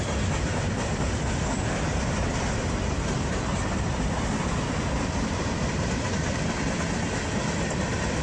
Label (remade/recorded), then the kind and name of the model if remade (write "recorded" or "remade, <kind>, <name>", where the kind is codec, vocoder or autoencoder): recorded